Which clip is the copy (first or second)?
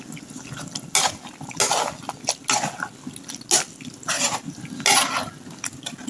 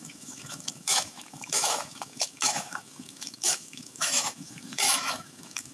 second